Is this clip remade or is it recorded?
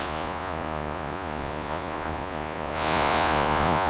remade